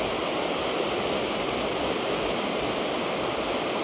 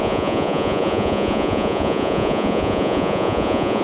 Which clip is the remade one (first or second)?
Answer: second